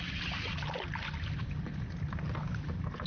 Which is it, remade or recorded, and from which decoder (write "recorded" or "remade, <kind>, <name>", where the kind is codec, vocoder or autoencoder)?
recorded